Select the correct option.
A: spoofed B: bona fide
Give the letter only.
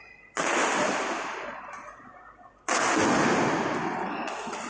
B